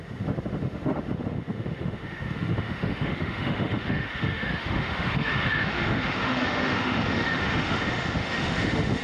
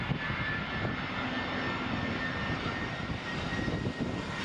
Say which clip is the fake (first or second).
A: first